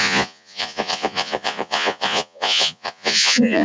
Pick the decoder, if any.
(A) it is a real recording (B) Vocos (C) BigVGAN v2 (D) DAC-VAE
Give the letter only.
B